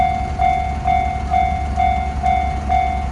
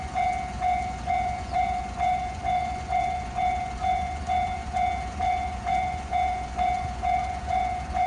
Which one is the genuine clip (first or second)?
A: first